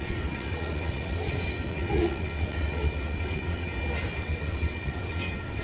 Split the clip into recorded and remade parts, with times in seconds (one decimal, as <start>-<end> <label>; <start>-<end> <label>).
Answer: 0.0-3.7 remade; 3.7-4.2 recorded; 4.2-5.6 remade